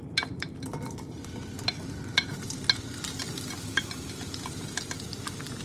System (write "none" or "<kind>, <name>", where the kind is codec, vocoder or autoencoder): none